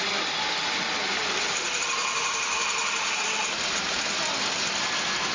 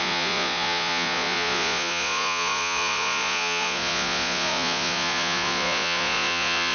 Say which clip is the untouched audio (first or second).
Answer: first